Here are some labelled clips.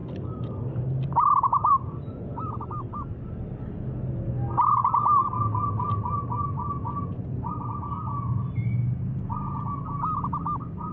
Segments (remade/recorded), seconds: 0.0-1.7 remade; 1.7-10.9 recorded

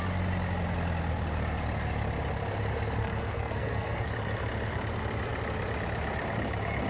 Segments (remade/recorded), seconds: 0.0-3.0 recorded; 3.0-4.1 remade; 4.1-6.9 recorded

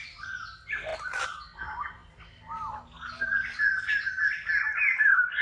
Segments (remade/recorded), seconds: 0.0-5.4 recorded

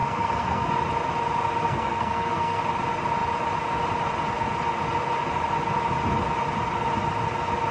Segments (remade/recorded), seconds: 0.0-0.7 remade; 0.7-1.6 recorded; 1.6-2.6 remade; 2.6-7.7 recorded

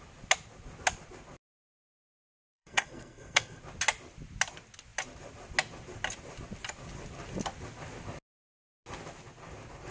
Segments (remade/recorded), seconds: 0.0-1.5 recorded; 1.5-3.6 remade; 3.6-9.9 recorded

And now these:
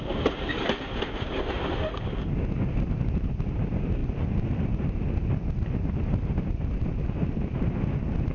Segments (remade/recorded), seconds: 0.0-8.3 recorded